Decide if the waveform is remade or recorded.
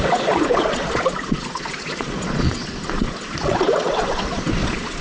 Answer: remade